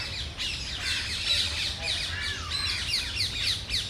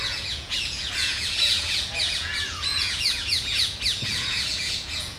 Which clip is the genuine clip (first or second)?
first